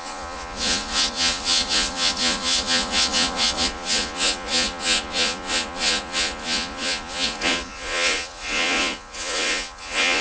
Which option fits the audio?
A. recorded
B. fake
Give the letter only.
B